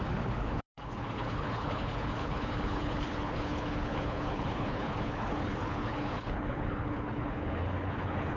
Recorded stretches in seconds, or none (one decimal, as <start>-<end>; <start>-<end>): none